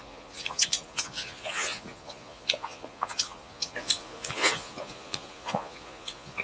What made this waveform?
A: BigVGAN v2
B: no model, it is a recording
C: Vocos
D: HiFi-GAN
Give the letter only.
C